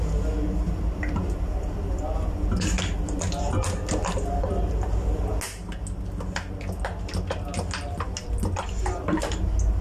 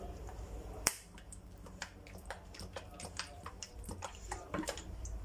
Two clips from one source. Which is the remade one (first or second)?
second